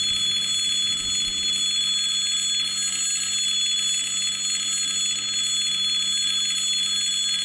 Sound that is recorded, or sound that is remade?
recorded